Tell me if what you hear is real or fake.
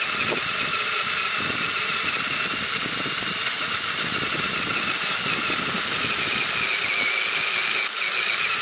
real